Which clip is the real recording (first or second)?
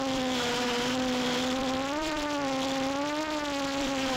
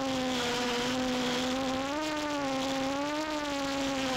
second